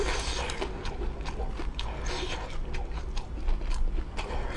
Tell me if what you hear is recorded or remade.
recorded